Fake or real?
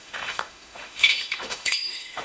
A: fake